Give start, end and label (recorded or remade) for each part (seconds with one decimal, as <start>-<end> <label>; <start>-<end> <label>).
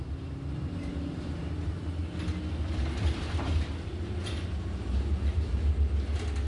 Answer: 0.0-0.9 recorded; 0.9-1.6 remade; 1.6-3.0 recorded; 3.0-5.7 remade; 5.7-6.5 recorded